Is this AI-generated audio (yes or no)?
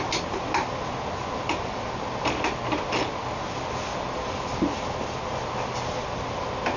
no